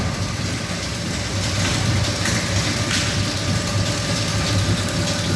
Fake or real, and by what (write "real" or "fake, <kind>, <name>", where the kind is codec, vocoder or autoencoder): real